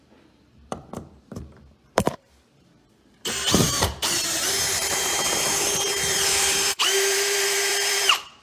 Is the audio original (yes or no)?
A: no